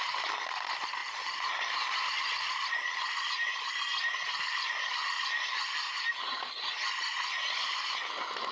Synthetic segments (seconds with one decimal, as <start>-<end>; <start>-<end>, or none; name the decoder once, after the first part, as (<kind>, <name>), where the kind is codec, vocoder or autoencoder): none